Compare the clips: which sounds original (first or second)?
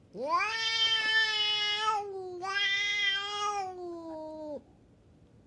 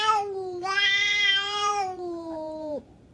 first